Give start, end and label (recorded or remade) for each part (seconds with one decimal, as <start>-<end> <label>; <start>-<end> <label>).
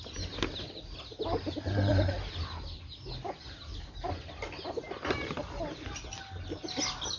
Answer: 0.0-1.9 recorded; 1.9-2.4 remade; 2.4-7.2 recorded